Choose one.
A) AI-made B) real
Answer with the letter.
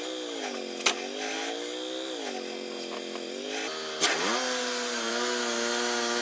B